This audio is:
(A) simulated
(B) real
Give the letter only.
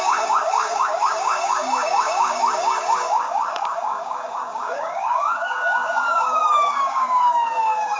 A